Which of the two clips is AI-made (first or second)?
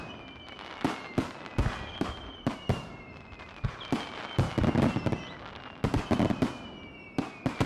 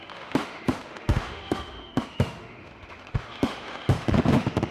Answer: second